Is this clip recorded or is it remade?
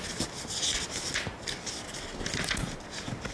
recorded